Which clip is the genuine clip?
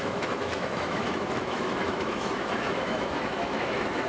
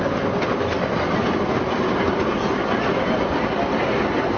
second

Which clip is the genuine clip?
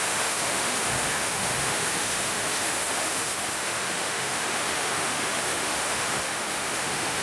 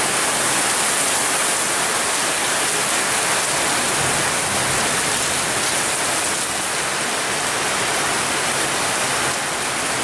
second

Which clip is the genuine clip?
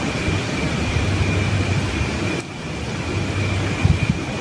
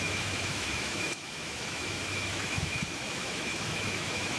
first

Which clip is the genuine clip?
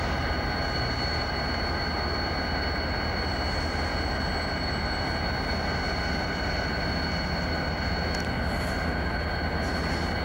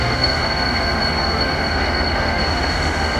first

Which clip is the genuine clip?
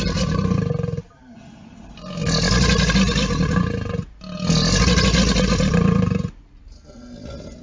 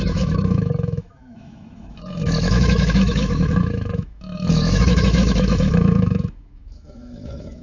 first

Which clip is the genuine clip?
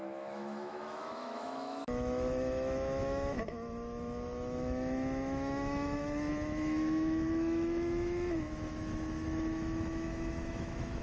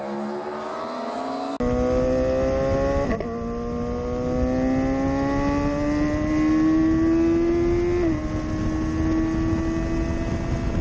second